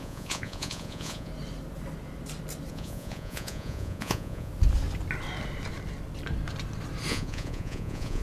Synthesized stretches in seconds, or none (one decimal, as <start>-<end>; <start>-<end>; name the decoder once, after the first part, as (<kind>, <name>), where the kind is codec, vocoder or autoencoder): 0.0-1.3 (vocoder, Vocos); 2.7-4.5; 7.1-8.2